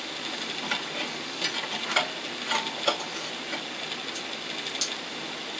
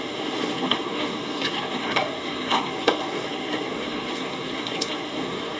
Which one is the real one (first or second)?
first